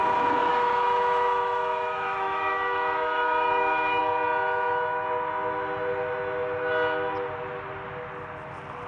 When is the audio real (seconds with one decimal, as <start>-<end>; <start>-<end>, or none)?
0.0-0.4; 4.0-8.9